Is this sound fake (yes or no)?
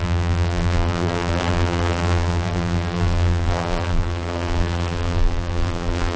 yes